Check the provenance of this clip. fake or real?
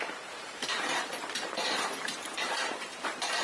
fake